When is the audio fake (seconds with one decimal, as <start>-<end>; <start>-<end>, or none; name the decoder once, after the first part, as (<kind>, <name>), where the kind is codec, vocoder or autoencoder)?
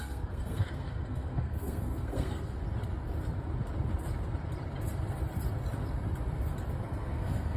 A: 0.0-2.6 (codec, SNAC); 6.8-7.6